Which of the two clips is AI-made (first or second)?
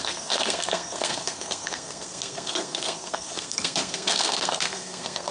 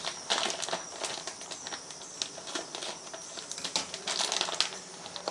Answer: first